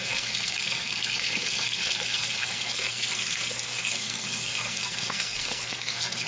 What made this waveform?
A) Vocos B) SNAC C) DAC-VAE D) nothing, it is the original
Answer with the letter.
B